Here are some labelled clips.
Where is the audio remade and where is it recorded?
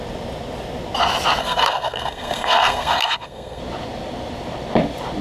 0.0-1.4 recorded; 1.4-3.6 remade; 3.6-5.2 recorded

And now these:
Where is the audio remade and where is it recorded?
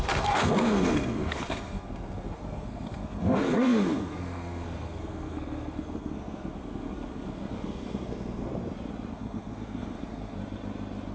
0.0-8.5 remade; 8.5-9.1 recorded; 9.1-10.4 remade; 10.4-11.1 recorded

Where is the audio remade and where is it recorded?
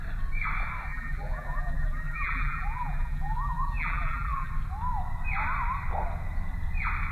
0.0-0.9 recorded; 0.9-4.5 remade; 4.5-7.1 recorded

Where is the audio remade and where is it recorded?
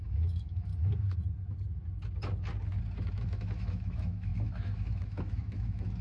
0.0-0.7 remade; 0.7-3.1 recorded; 3.1-6.0 remade